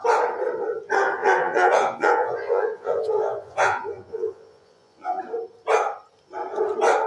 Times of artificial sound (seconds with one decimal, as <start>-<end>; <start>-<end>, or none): 1.2-5.2